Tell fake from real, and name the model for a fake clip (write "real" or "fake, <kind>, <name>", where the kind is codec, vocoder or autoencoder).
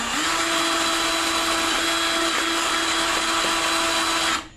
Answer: real